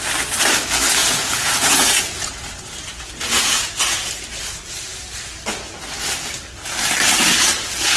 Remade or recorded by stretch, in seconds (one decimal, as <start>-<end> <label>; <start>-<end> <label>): 0.0-1.0 recorded; 1.0-4.1 remade; 4.1-8.0 recorded